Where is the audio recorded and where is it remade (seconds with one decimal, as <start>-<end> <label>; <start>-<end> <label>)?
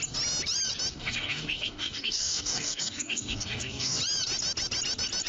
0.0-0.9 recorded; 0.9-4.0 remade; 4.0-5.3 recorded